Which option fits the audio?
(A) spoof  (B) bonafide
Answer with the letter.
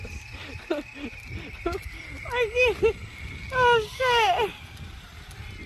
B